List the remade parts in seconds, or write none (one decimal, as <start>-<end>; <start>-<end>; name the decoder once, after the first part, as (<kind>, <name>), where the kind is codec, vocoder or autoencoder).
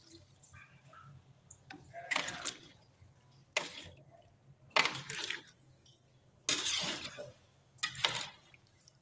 none